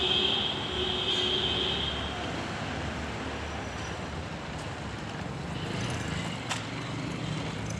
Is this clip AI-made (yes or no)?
no